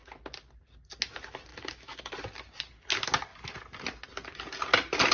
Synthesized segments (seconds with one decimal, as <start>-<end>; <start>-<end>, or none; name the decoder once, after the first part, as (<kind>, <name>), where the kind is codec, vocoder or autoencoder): 1.5-2.1 (autoencoder, DAC-VAE)